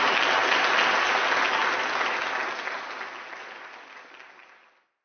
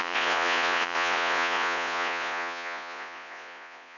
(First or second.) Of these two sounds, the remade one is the second